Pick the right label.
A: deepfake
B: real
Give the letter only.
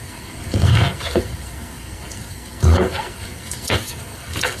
A